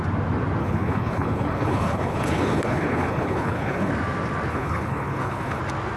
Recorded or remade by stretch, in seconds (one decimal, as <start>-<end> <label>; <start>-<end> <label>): 0.0-0.6 recorded; 0.6-3.9 remade; 3.9-4.5 recorded; 4.5-5.6 remade; 5.6-6.0 recorded